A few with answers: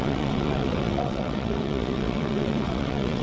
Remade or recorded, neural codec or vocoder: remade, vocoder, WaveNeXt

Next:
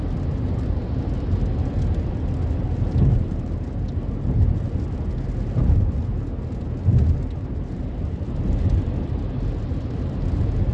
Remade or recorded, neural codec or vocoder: recorded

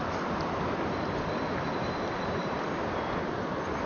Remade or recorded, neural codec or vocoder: recorded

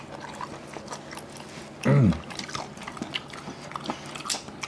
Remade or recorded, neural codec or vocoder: recorded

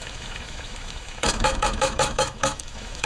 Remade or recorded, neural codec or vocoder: remade, autoencoder, DAC-VAE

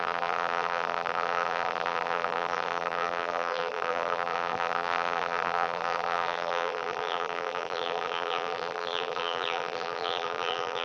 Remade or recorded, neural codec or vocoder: remade, vocoder, BigVGAN v2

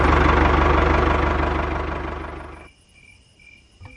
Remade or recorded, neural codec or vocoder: recorded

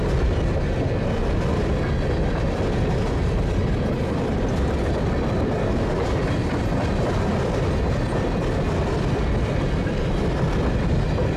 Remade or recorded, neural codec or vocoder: recorded